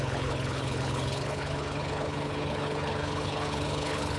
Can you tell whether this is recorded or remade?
remade